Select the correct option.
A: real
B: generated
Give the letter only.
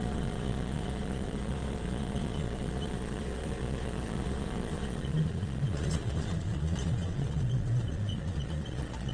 B